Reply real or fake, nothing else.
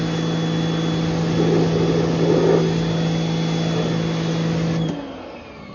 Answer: real